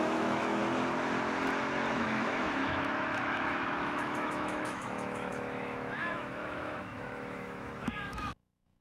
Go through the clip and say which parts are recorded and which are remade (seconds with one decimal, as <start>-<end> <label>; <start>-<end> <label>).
0.0-0.6 remade; 0.6-1.9 recorded; 1.9-8.8 remade